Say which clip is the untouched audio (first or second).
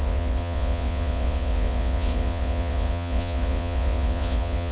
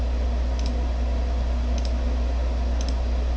second